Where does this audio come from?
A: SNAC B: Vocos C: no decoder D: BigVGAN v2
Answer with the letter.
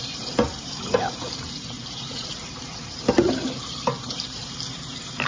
D